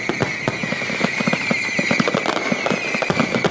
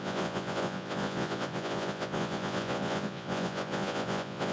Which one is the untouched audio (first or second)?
first